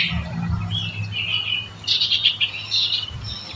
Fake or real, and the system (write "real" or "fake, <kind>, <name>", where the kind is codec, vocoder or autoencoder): real